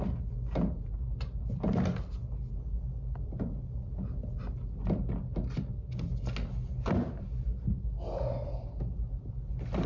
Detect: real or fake real